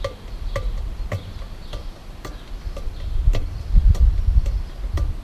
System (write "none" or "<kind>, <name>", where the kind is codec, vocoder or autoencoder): none